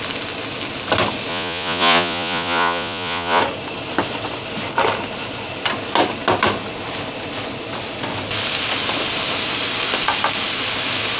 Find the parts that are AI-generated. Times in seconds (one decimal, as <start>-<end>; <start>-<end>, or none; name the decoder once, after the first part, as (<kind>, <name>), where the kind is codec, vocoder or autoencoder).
1.3-3.4 (vocoder, Vocos)